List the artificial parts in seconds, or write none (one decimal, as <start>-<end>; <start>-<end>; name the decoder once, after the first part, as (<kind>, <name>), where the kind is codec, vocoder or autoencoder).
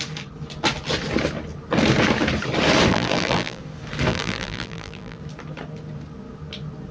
2.9-3.6 (vocoder, BigVGAN v2); 4.1-5.2